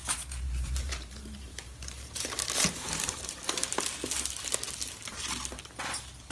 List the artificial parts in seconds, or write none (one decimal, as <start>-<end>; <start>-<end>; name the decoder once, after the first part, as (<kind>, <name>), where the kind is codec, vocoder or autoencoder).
0.0-3.8 (vocoder, BigVGAN v2)